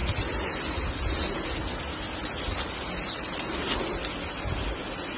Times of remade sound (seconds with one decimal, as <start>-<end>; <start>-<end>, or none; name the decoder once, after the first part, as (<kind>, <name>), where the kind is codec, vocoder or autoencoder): none